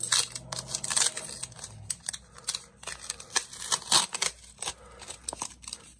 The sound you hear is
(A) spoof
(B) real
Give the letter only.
B